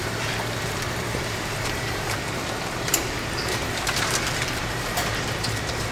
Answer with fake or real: fake